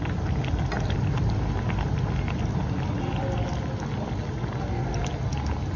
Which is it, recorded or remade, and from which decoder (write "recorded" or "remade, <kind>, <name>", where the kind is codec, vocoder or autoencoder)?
recorded